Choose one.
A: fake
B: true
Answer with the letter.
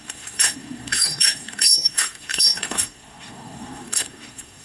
A